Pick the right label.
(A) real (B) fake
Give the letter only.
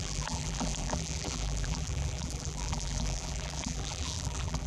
B